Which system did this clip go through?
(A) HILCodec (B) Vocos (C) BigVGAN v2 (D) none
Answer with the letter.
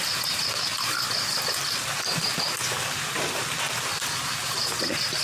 D